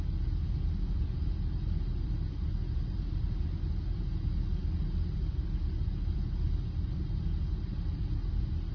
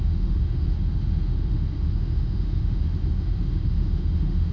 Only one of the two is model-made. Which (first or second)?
second